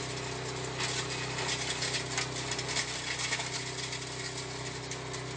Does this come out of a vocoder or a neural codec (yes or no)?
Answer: no